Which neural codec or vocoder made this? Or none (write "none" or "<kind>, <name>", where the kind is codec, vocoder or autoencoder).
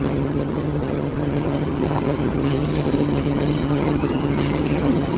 vocoder, HiFi-GAN